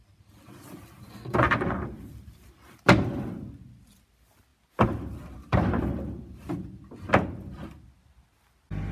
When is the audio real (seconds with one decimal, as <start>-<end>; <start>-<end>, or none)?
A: 0.0-8.9